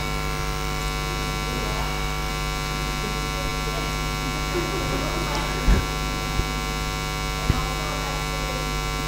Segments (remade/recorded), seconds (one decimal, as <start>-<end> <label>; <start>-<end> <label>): 0.0-0.8 remade; 0.8-1.8 recorded; 1.8-2.3 remade; 2.3-9.1 recorded